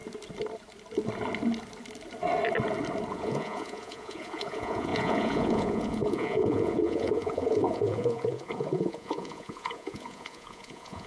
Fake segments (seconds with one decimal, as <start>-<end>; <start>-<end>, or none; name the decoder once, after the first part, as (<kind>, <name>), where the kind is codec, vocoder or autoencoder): 3.1-11.1 (vocoder, Vocos)